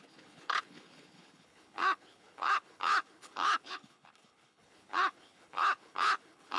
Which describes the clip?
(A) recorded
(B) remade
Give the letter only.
B